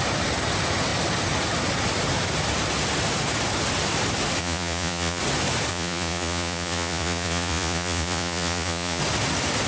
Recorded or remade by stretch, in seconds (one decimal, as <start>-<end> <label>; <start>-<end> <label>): 0.0-4.4 recorded; 4.4-5.2 remade; 5.2-5.7 recorded; 5.7-9.0 remade; 9.0-9.7 recorded